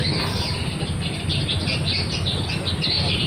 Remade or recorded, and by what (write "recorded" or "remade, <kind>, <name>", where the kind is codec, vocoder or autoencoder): recorded